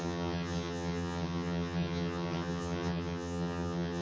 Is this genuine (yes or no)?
no